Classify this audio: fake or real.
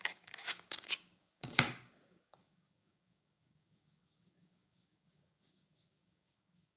fake